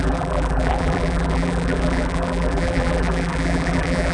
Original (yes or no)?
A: no